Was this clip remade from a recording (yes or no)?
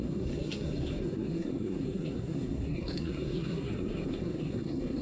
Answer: yes